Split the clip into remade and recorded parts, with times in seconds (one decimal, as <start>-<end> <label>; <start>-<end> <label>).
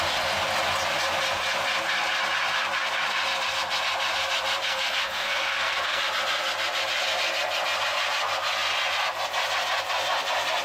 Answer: 0.0-4.6 recorded; 4.6-6.0 remade; 6.0-10.6 recorded